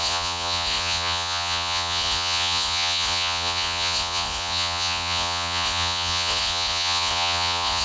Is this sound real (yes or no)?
no